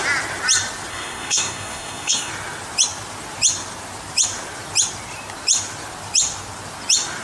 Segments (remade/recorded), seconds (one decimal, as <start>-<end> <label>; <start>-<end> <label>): 0.0-0.9 recorded; 0.9-2.3 remade; 2.3-7.2 recorded